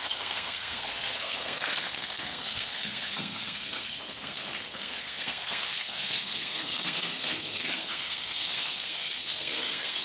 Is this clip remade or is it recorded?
remade